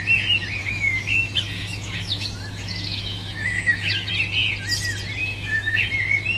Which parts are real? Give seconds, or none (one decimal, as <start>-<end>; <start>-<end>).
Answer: 0.0-0.6; 4.1-5.2; 5.9-6.4